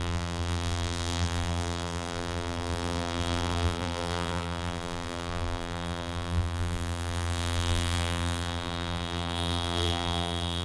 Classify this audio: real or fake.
fake